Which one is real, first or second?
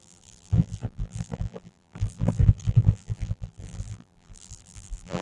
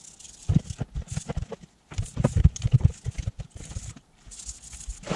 second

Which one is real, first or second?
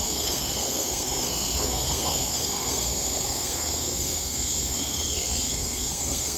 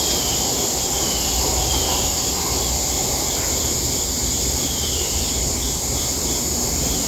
second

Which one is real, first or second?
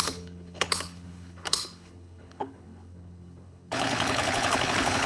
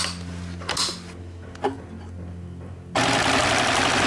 second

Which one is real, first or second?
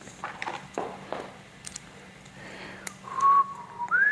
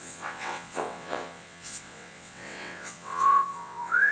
first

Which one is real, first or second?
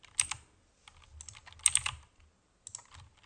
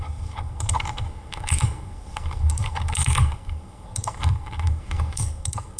first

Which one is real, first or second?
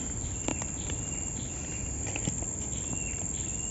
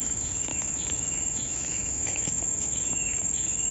first